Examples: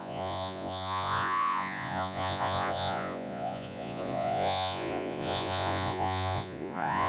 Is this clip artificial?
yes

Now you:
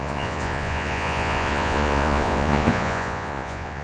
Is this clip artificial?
yes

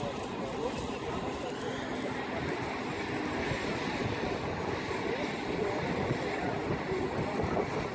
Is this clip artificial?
no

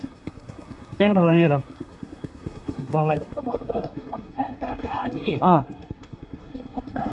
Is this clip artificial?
yes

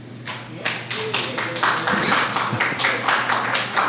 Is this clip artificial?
no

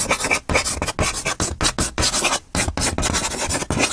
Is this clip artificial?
no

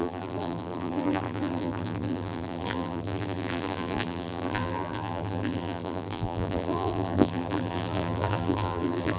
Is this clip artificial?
yes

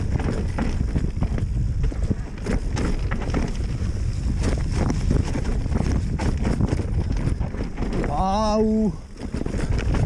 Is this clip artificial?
no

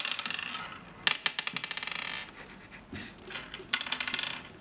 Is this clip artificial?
no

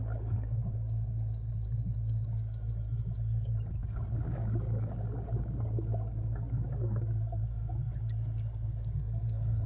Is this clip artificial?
yes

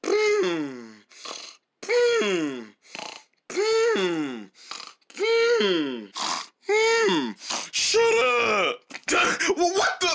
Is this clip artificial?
no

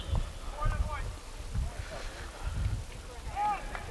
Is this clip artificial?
no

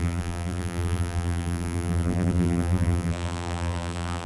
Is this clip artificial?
yes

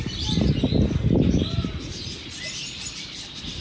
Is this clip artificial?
no